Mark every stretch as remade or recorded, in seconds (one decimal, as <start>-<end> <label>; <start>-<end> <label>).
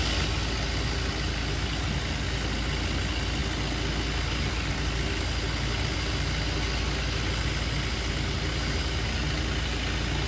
0.0-10.3 recorded